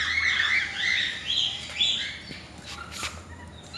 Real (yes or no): yes